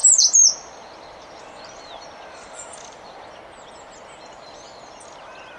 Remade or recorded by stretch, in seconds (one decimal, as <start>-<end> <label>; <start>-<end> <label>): 0.0-3.4 remade; 3.4-5.6 recorded